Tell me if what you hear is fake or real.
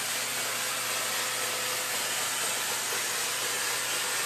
real